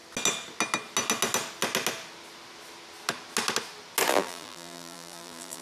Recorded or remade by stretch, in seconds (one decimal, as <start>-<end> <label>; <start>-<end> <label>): 0.0-4.1 recorded; 4.1-5.6 remade